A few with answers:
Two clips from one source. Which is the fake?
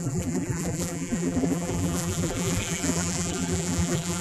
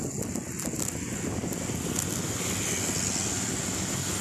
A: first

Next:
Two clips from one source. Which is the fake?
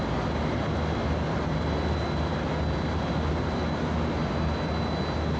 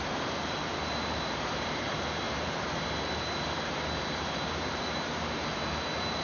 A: second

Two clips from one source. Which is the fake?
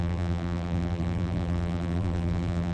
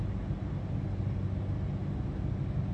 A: first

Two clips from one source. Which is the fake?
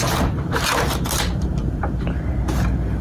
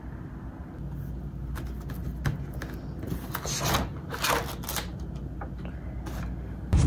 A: first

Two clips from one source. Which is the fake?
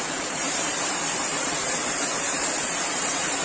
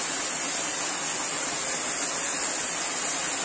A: first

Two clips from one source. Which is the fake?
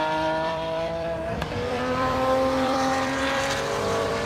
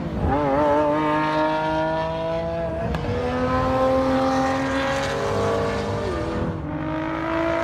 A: first